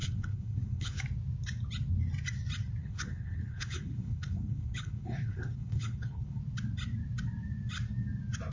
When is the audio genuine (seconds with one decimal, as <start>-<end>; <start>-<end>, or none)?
1.0-2.8; 6.4-8.5